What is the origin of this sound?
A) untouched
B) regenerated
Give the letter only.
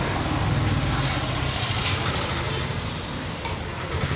A